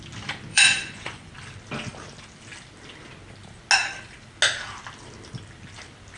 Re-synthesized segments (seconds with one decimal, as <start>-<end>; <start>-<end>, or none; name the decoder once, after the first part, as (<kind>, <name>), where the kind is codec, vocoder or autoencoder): 0.5-1.3 (vocoder, Vocos)